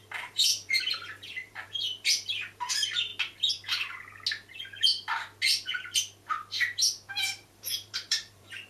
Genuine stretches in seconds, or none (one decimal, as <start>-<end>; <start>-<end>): 3.1-7.1